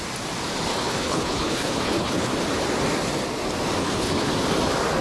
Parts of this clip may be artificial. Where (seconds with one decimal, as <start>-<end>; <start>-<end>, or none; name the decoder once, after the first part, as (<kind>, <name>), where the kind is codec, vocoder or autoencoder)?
0.7-2.3 (codec, HILCodec); 3.8-4.3